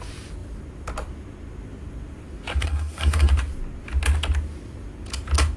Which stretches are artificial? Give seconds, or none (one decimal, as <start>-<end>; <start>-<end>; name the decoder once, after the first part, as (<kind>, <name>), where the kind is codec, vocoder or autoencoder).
2.5-3.3 (codec, SNAC)